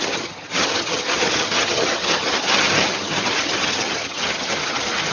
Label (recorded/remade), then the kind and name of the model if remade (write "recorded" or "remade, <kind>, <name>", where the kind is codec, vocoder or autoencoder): remade, vocoder, HiFi-GAN